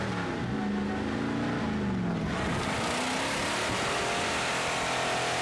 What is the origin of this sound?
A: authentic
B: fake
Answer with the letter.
A